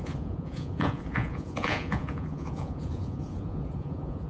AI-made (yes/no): yes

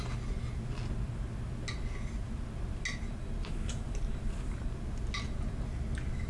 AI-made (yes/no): no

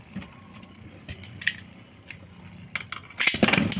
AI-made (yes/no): no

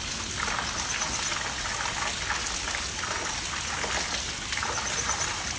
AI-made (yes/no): no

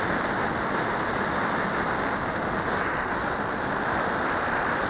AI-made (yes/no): no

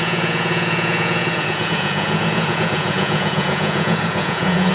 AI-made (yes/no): yes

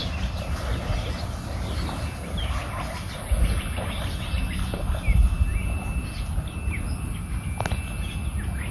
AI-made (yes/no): no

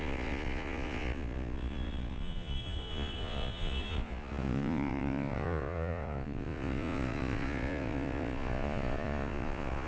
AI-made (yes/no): yes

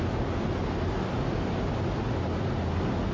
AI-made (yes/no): no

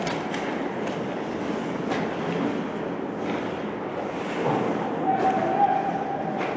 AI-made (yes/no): no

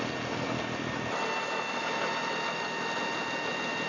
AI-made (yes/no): no